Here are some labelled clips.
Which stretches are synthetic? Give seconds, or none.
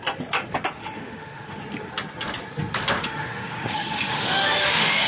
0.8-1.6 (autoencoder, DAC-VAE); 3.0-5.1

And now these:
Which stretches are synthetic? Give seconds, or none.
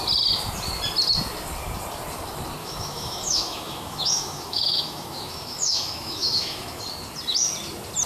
2.6-6.8 (autoencoder, DAC-VAE)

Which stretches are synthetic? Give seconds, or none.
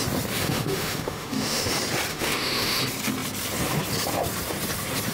0.4-1.7 (autoencoder, DAC-VAE); 2.1-2.8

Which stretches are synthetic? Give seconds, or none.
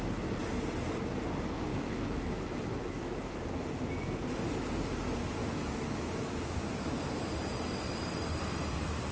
1.7-3.4 (autoencoder, DAC-VAE); 5.4-7.3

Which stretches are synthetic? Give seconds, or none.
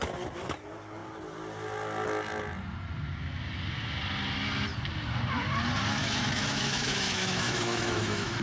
6.0-8.4 (autoencoder, DAC-VAE)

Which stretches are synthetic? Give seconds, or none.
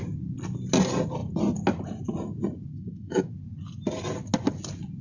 2.7-3.3 (autoencoder, DAC-VAE)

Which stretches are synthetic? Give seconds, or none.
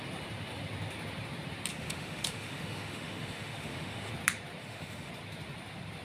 1.7-4.1 (autoencoder, DAC-VAE); 4.6-5.1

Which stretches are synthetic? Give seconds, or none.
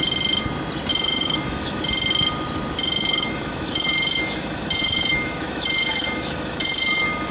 0.9-1.8 (autoencoder, DAC-VAE); 2.8-7.3